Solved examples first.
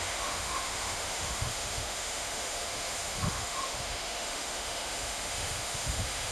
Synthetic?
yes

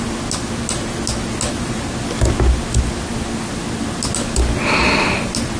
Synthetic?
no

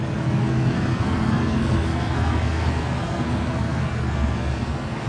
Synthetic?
yes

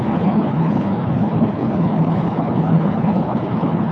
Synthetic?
yes